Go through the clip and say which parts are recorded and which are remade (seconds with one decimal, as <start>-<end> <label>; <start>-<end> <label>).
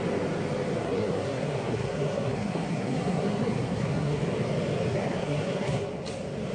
0.0-0.8 recorded; 0.8-4.2 remade; 4.2-4.9 recorded; 4.9-5.9 remade; 5.9-6.5 recorded